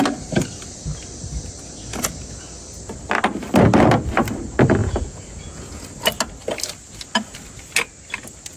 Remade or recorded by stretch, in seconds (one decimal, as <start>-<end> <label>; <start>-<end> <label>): 0.0-4.8 recorded; 4.8-5.8 remade; 5.8-8.6 recorded